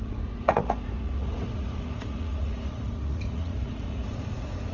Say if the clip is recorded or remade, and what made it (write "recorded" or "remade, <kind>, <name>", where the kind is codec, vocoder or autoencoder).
remade, vocoder, Vocos